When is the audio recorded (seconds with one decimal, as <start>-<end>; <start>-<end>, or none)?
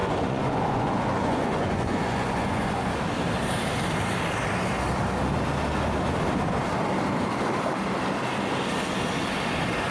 2.9-9.9